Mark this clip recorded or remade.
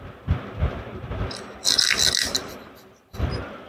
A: recorded